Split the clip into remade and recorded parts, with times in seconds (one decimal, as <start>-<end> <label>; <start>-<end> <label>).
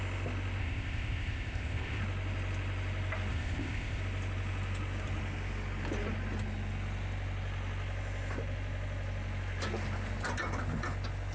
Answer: 0.0-0.6 recorded; 0.6-2.0 remade; 2.0-3.3 recorded; 3.3-4.0 remade; 4.0-11.3 recorded